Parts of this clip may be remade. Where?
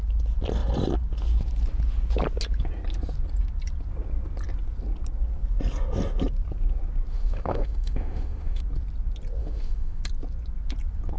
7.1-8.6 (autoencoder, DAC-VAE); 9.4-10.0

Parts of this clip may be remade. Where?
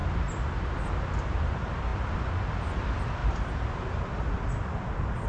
none